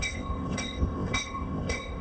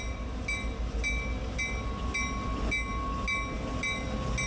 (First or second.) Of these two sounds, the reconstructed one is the first